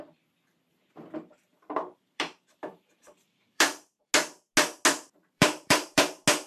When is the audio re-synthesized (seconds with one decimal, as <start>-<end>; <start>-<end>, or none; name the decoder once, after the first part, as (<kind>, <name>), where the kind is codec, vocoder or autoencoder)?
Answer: 1.5-4.1 (vocoder, BigVGAN v2); 5.2-6.0